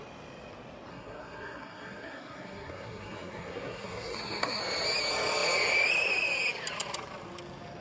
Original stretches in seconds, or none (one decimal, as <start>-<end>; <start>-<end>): 0.0-0.9; 4.6-7.8